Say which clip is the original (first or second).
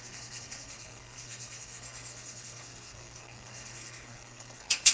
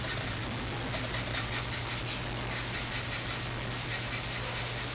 second